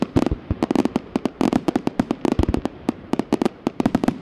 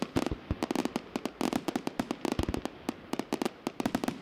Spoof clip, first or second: first